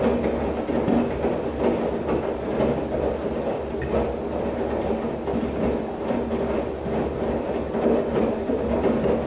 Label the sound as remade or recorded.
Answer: recorded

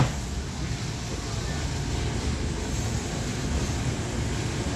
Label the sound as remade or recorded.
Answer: recorded